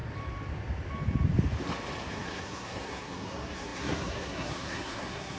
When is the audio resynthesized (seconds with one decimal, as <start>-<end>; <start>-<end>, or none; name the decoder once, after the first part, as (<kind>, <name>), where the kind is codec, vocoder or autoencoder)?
2.1-5.4 (codec, SNAC)

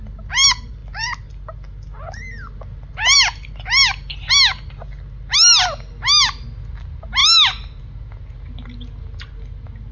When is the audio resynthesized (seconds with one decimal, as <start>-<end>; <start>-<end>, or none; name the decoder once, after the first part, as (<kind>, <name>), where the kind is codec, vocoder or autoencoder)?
none

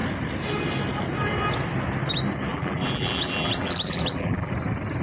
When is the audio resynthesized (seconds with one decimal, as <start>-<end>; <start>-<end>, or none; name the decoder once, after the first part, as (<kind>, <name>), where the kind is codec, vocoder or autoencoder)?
2.5-4.5 (vocoder, BigVGAN v2)

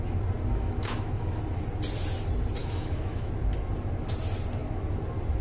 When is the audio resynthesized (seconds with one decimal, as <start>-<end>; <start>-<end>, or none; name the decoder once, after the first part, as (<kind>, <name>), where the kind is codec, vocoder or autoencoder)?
0.5-1.4 (autoencoder, DAC-VAE); 2.6-3.3

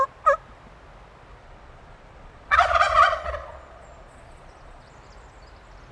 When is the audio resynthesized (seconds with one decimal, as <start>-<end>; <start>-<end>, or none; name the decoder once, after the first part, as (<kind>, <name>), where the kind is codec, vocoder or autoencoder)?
1.4-4.9 (vocoder, Vocos)

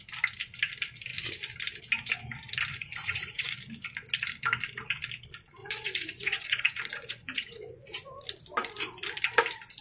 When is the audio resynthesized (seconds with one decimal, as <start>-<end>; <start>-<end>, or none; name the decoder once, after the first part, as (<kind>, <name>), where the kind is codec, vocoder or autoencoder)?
2.7-3.5 (vocoder, Vocos); 5.6-8.2

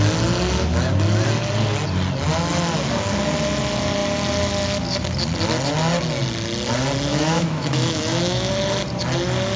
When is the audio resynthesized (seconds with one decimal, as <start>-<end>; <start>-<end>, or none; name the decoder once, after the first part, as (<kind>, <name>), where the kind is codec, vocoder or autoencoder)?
7.1-8.5 (autoencoder, DAC-VAE)